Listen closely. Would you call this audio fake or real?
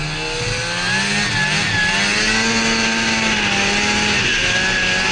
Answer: real